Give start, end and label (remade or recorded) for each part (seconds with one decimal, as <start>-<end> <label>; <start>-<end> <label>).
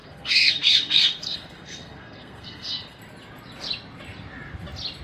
0.0-3.0 remade; 3.0-5.0 recorded